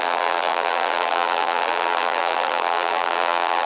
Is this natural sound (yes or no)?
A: no